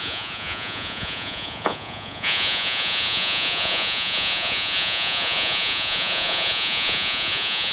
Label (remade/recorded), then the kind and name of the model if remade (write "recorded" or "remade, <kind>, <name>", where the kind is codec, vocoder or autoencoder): remade, vocoder, Vocos